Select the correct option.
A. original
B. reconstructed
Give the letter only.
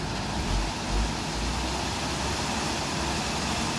A